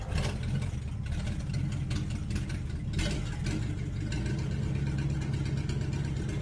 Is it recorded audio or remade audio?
recorded